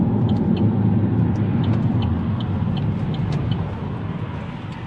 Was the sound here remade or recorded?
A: recorded